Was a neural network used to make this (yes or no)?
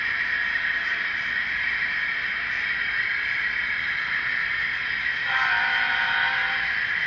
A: no